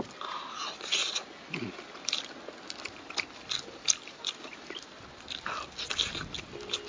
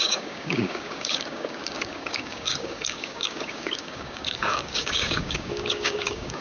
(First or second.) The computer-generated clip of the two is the second